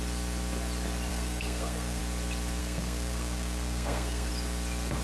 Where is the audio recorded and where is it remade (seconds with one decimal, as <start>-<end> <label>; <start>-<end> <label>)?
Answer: 0.0-1.1 recorded; 1.1-2.0 remade; 2.0-2.6 recorded; 2.6-4.3 remade; 4.3-5.0 recorded